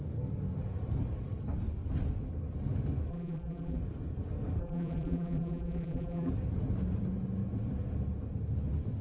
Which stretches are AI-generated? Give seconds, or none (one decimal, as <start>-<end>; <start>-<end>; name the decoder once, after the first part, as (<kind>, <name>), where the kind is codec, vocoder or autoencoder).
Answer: 3.1-3.8 (vocoder, BigVGAN v2); 4.6-6.3